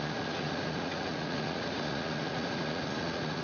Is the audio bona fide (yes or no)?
no